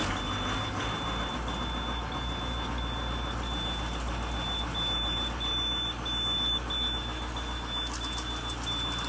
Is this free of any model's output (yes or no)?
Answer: yes